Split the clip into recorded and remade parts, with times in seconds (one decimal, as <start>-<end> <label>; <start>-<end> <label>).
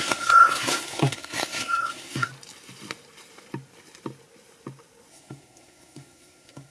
0.0-2.3 remade; 2.3-5.1 recorded; 5.1-6.7 remade